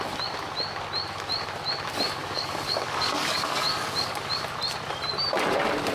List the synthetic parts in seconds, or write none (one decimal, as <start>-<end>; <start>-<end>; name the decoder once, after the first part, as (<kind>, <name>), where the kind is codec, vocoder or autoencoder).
2.2-4.3 (codec, DAC)